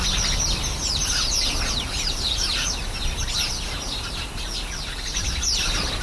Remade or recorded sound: recorded